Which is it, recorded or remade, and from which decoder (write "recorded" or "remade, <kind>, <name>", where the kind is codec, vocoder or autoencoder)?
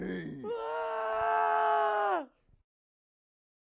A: recorded